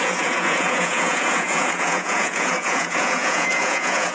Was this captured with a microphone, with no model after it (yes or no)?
no